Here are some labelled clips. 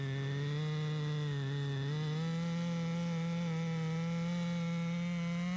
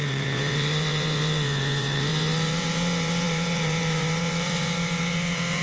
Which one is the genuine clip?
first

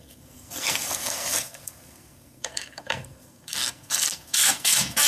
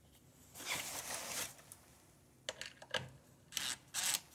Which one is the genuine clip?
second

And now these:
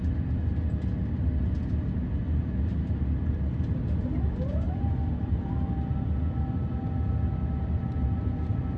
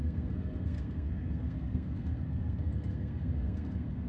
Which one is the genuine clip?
first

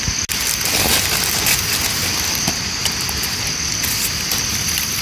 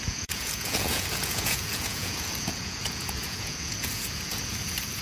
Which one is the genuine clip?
first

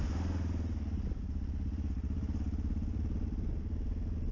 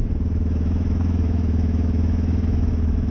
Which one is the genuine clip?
first